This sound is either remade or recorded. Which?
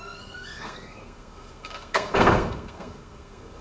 remade